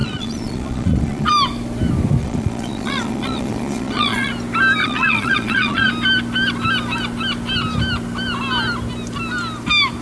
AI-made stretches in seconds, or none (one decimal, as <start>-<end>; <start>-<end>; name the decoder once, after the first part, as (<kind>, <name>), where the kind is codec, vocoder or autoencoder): 0.0-1.3 (vocoder, Vocos); 2.2-4.3; 4.8-5.9